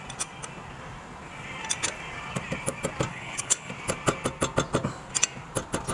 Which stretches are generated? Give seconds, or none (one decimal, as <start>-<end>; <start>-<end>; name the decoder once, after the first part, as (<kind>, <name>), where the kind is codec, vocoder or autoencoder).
3.1-3.7 (codec, HILCodec)